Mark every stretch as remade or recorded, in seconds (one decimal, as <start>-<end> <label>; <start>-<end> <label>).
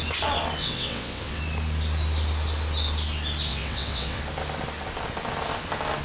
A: 0.0-0.6 recorded; 0.6-1.4 remade; 1.4-3.5 recorded; 3.5-4.2 remade; 4.2-6.0 recorded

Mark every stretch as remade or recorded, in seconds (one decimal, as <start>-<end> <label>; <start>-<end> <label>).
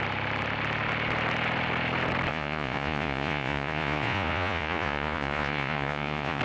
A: 0.0-2.3 recorded; 2.3-6.4 remade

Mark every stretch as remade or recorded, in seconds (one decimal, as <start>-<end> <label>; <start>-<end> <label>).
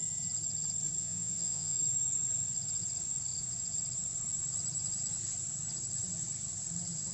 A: 0.0-1.0 recorded; 1.0-1.8 remade; 1.8-7.1 recorded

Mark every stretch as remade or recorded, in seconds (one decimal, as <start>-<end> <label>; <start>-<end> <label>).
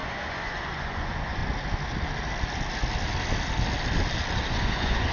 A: 0.0-1.4 remade; 1.4-4.5 recorded; 4.5-5.1 remade